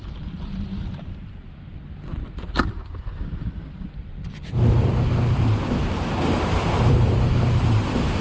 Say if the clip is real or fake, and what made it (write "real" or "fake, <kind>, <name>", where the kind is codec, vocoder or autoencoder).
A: fake, vocoder, BigVGAN v2